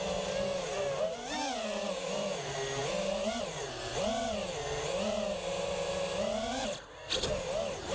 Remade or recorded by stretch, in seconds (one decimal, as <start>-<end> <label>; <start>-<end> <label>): 0.0-2.8 recorded; 2.8-3.4 remade; 3.4-7.9 recorded